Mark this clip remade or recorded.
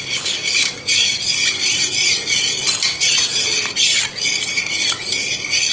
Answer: recorded